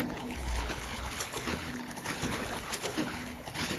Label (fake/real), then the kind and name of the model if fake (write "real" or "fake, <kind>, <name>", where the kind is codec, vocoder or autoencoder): fake, codec, HILCodec